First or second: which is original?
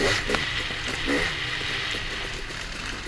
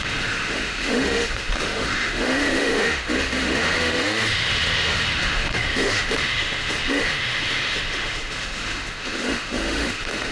first